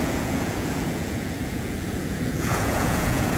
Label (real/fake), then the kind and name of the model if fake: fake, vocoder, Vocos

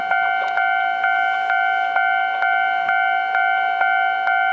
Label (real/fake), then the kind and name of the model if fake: real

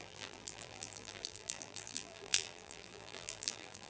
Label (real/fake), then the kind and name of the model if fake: fake, vocoder, BigVGAN v2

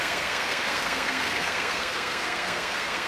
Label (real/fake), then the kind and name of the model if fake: fake, codec, SNAC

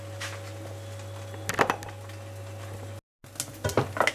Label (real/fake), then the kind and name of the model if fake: real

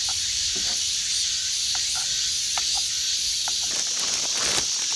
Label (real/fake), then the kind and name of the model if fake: real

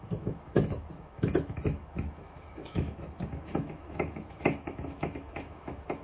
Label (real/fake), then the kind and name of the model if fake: fake, autoencoder, DAC-VAE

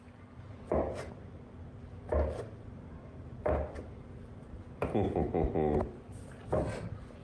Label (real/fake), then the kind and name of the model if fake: fake, vocoder, BigVGAN v2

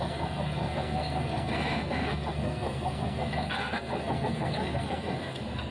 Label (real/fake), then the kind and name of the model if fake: fake, codec, SNAC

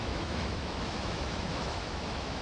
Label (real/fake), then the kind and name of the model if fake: fake, autoencoder, DAC-VAE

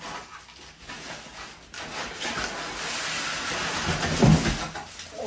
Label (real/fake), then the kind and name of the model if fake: real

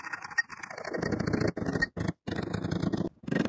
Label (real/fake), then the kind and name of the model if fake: real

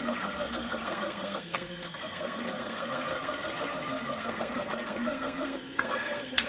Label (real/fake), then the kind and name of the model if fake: fake, codec, SNAC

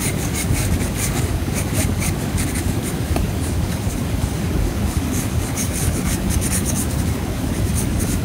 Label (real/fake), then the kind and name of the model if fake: fake, codec, DAC